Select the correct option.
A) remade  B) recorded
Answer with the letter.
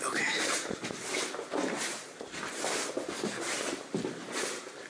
B